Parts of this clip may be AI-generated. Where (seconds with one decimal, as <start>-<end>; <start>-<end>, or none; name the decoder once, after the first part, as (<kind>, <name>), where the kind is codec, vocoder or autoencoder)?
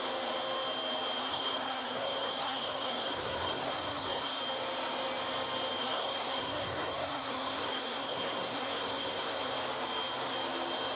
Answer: 1.2-4.4 (codec, SNAC); 5.8-9.5